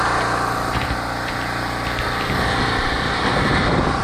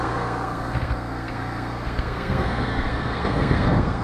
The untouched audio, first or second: first